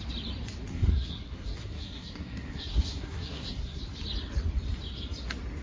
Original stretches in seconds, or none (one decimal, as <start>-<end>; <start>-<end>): 0.0-0.7; 3.8-5.6